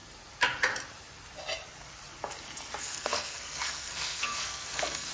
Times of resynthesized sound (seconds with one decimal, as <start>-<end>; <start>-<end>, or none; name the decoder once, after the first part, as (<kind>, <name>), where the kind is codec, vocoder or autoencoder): 2.8-5.1 (codec, SNAC)